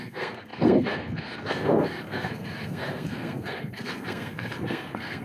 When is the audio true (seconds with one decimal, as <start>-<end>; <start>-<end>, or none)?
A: none